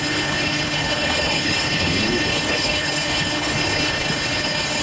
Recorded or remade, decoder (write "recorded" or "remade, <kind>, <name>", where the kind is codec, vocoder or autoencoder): remade, codec, HILCodec